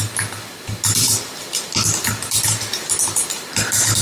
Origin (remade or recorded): recorded